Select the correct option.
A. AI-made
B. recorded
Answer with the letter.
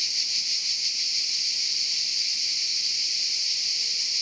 A